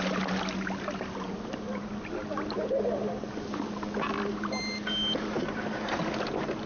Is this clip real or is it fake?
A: real